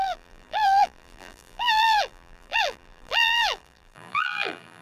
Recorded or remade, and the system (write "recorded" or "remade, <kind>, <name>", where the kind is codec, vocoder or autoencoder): remade, vocoder, BigVGAN v2